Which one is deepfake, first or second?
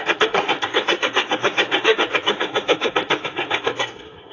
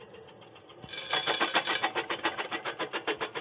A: first